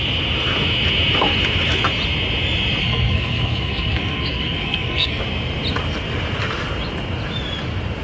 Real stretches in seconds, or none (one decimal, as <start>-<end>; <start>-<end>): 0.0-2.8; 5.2-8.0